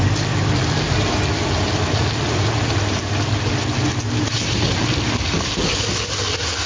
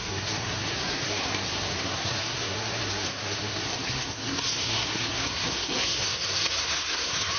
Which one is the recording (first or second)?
first